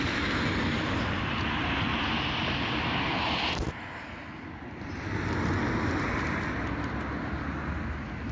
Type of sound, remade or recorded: recorded